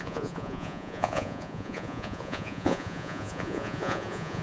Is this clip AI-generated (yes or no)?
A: yes